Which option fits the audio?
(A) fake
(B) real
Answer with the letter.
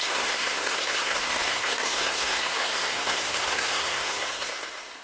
A